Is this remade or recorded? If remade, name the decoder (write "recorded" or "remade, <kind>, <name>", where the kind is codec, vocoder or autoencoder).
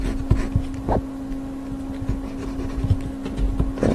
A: recorded